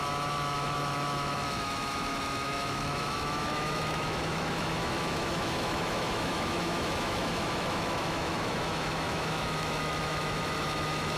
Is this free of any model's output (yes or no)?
no